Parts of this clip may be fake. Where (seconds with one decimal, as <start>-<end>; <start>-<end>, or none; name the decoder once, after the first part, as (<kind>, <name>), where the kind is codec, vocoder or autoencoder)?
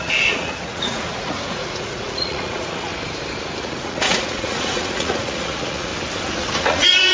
0.0-2.9 (vocoder, Vocos); 3.6-5.9; 6.6-7.1